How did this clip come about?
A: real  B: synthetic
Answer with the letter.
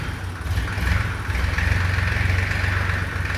A